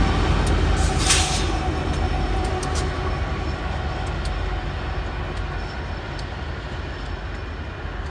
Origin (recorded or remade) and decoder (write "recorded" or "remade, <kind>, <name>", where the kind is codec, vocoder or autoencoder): recorded